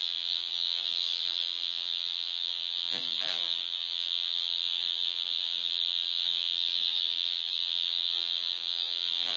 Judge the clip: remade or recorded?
remade